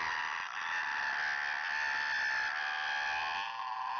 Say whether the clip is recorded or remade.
recorded